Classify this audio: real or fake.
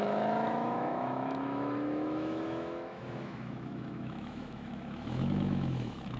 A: fake